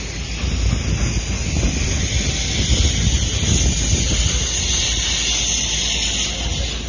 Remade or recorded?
recorded